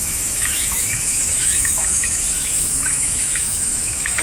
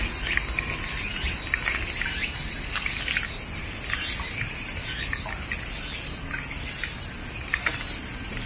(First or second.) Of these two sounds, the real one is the second